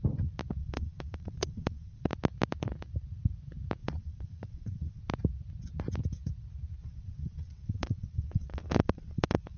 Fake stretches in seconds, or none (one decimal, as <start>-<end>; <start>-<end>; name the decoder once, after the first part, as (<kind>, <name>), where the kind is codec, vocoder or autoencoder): 0.6-2.1 (vocoder, WaveNeXt); 3.8-5.0; 6.8-9.6